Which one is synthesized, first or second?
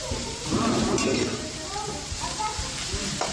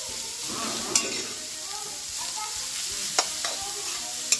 first